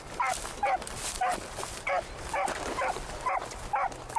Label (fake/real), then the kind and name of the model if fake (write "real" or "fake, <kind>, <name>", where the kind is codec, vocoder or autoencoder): real